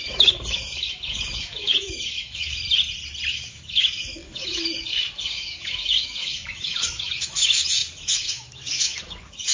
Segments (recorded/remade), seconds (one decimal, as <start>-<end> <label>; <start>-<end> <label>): 0.0-2.6 remade; 2.6-3.3 recorded; 3.3-9.5 remade